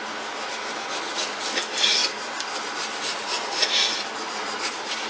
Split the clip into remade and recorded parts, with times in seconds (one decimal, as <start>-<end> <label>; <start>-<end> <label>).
0.0-5.1 recorded